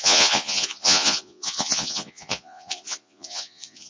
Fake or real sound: fake